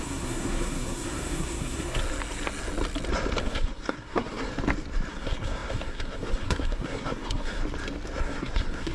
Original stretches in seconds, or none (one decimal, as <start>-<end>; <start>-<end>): 2.0-3.4; 4.5-5.1; 7.6-8.2